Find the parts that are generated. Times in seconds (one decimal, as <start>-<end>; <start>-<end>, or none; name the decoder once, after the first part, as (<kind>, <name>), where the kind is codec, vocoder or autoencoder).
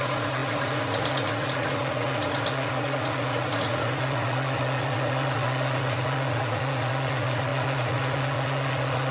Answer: 0.0-9.1 (vocoder, Vocos)